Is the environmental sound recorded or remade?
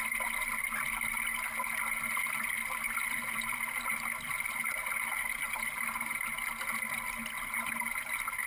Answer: recorded